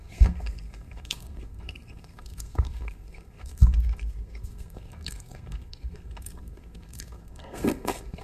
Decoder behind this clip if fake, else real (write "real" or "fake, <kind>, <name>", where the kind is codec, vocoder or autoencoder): fake, codec, SNAC